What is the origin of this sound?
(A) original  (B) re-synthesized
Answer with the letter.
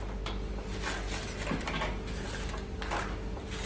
A